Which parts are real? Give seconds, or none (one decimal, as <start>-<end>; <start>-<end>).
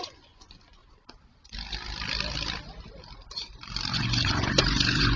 0.8-3.9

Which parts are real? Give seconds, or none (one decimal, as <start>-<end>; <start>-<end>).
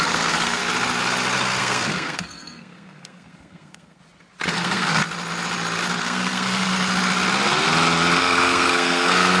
0.6-1.6; 4.0-4.5; 5.0-6.0; 6.7-8.2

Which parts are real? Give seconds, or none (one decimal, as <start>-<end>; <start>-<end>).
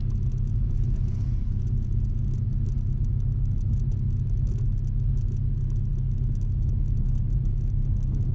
0.0-0.5; 2.2-8.3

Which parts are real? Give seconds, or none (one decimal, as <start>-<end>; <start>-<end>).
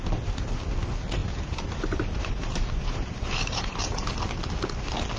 0.0-1.2; 4.1-5.2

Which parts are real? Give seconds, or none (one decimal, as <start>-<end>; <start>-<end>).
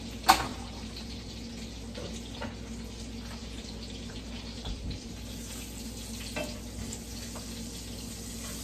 0.0-0.5; 1.5-8.6